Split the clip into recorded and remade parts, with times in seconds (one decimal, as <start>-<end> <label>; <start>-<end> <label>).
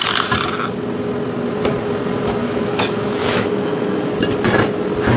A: 0.0-2.4 recorded; 2.4-4.1 remade; 4.1-5.2 recorded